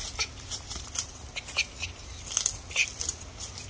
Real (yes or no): yes